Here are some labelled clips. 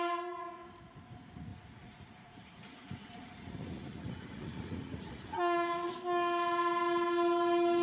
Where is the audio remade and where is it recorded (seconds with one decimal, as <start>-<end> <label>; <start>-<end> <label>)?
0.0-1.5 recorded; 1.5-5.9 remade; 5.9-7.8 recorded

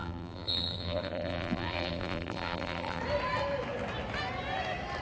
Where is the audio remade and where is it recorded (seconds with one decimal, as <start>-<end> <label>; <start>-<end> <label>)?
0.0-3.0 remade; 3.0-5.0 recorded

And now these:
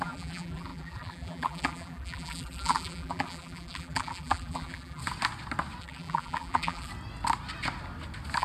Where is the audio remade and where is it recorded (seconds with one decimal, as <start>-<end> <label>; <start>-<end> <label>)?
0.0-5.0 remade; 5.0-5.8 recorded; 5.8-6.9 remade; 6.9-8.4 recorded

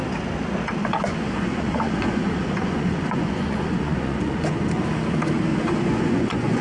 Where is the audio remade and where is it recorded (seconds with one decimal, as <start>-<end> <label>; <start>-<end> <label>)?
0.0-0.8 recorded; 0.8-4.8 remade; 4.8-5.5 recorded; 5.5-6.6 remade

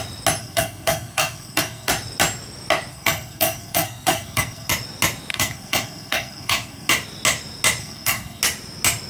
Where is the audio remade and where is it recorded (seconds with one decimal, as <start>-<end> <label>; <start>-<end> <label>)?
0.0-0.4 recorded; 0.4-1.9 remade; 1.9-2.9 recorded; 2.9-4.7 remade; 4.7-5.3 recorded; 5.3-6.9 remade; 6.9-7.8 recorded; 7.8-8.4 remade; 8.4-9.1 recorded

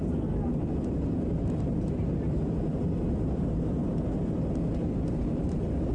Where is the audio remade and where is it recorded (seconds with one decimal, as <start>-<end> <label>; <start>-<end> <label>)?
0.0-2.7 recorded; 2.7-4.2 remade; 4.2-5.9 recorded

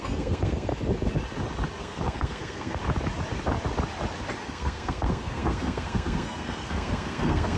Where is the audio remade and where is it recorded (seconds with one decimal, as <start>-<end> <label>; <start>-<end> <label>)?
0.0-0.7 remade; 0.7-1.8 recorded; 1.8-2.8 remade; 2.8-4.4 recorded; 4.4-7.6 remade

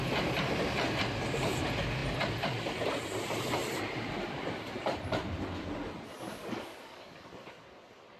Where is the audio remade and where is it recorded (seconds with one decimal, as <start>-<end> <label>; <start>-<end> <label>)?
0.0-6.4 recorded; 6.4-7.3 remade; 7.3-8.2 recorded